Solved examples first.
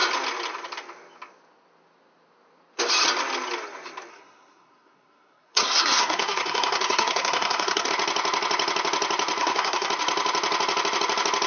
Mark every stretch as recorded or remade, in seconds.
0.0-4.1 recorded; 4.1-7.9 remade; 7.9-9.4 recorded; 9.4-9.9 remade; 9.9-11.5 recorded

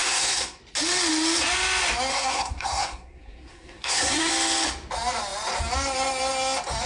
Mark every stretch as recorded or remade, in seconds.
0.0-0.6 remade; 0.6-2.1 recorded; 2.1-4.3 remade; 4.3-6.9 recorded